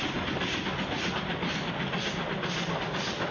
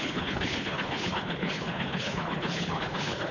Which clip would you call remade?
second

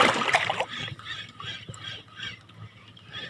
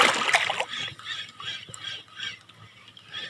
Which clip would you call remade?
first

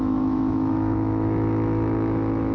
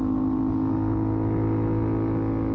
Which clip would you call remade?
first